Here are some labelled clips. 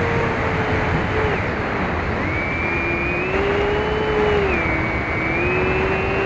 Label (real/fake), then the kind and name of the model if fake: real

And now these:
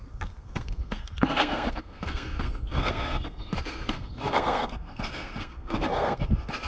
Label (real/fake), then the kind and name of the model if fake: fake, codec, SNAC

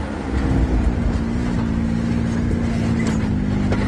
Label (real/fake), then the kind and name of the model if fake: real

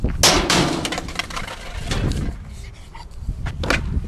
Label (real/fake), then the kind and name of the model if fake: real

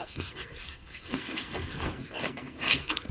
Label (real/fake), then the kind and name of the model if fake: fake, codec, SNAC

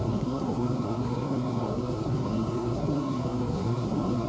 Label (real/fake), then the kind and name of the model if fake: fake, codec, SNAC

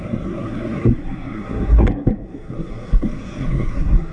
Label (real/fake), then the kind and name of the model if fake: fake, codec, SNAC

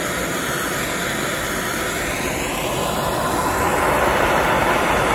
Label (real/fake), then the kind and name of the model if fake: real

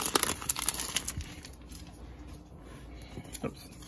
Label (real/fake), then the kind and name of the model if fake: real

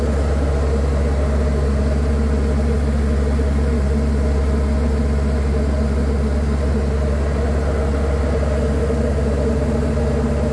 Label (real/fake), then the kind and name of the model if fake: real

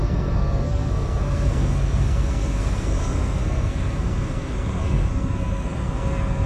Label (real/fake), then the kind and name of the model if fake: fake, codec, SNAC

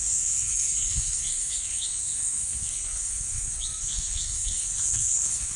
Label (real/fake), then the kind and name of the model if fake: fake, codec, SNAC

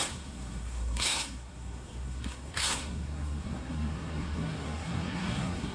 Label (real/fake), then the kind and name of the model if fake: fake, codec, SNAC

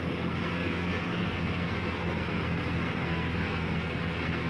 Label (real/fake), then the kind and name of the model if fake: fake, codec, SNAC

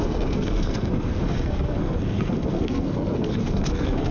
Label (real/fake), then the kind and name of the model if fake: fake, codec, SNAC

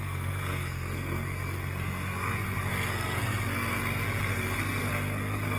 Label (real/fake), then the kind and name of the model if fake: fake, codec, SNAC